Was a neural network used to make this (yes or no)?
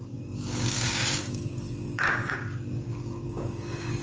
yes